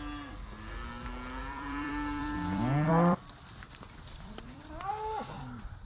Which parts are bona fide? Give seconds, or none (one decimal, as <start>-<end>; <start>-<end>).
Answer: 0.0-1.4; 4.9-5.9